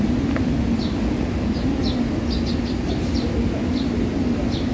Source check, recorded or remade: recorded